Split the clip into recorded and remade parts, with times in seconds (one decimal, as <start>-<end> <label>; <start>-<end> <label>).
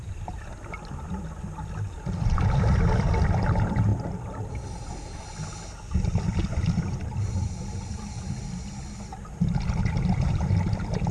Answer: 0.0-6.4 recorded; 6.4-8.3 remade; 8.3-11.1 recorded